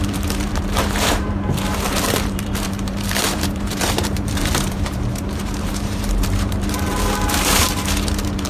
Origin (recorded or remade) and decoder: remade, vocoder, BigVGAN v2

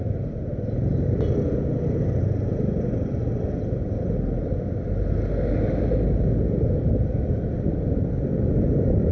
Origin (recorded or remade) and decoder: recorded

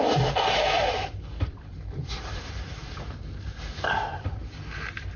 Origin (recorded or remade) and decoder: remade, vocoder, BigVGAN v2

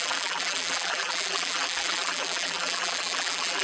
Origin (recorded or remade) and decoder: remade, vocoder, BigVGAN v2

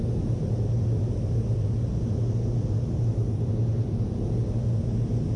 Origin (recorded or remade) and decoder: recorded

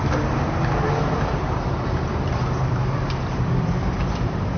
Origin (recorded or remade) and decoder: remade, vocoder, BigVGAN v2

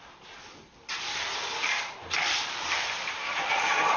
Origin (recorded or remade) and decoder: remade, vocoder, BigVGAN v2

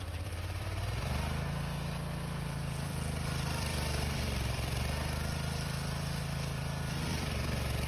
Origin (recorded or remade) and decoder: remade, vocoder, BigVGAN v2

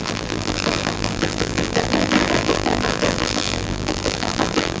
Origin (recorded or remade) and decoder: remade, vocoder, BigVGAN v2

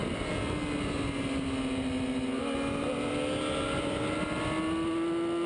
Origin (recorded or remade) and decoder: recorded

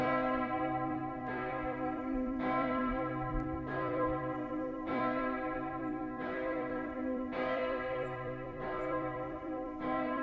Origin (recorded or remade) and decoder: remade, vocoder, BigVGAN v2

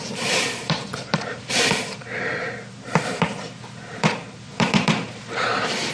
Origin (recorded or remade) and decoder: remade, vocoder, BigVGAN v2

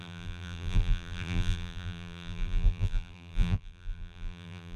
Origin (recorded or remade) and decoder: remade, vocoder, BigVGAN v2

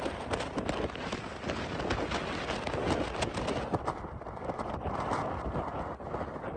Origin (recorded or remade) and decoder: recorded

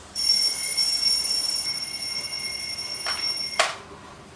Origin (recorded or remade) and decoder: remade, vocoder, BigVGAN v2